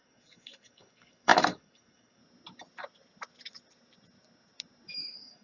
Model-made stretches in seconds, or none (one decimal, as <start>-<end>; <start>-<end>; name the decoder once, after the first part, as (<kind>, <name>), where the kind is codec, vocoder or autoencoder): 0.0-2.2 (codec, DAC); 5.0-5.4